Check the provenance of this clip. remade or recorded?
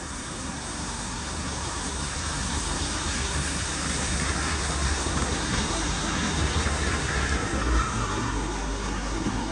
remade